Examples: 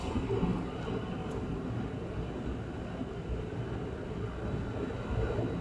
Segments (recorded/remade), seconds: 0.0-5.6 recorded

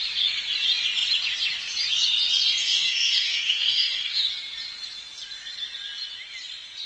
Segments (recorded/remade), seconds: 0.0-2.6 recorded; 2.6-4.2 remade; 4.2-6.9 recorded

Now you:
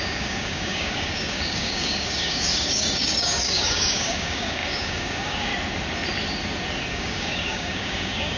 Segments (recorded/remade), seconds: 0.0-5.5 remade; 5.5-6.9 recorded; 6.9-8.4 remade

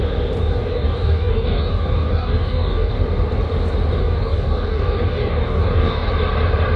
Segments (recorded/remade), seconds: 0.0-0.4 recorded; 0.4-2.9 remade; 2.9-4.0 recorded; 4.0-6.1 remade; 6.1-6.8 recorded

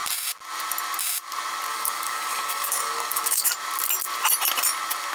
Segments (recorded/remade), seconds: 0.0-1.7 recorded; 1.7-3.5 remade; 3.5-5.1 recorded

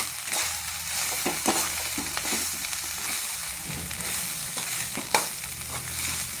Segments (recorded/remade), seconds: 0.0-4.4 recorded; 4.4-5.3 remade; 5.3-6.4 recorded